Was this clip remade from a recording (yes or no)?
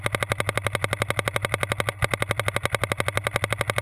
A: no